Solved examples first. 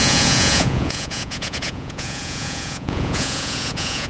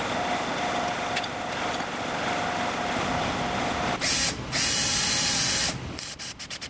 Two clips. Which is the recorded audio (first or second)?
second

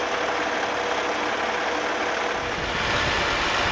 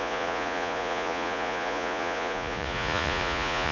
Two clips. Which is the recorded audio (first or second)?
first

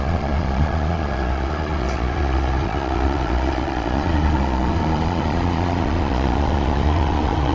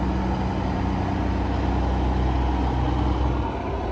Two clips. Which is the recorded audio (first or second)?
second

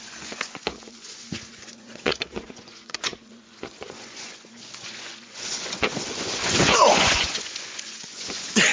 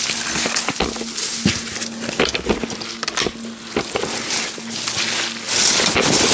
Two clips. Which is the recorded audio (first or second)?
second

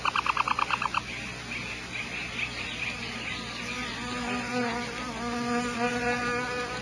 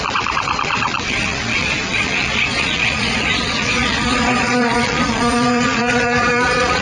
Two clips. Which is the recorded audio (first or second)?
first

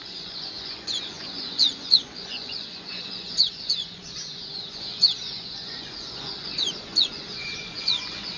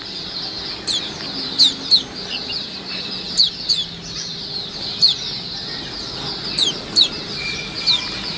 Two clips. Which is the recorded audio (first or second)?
second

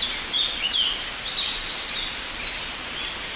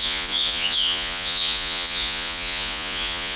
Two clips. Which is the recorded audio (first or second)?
first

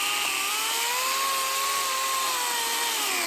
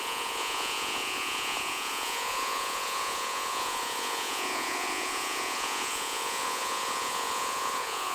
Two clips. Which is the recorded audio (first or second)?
first